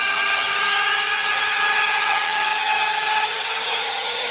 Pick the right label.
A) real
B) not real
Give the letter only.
B